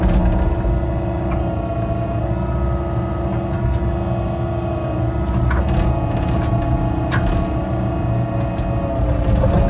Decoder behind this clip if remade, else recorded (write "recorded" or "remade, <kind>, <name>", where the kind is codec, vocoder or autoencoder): recorded